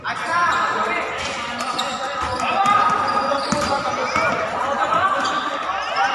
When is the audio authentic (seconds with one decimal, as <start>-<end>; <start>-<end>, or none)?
0.0-2.3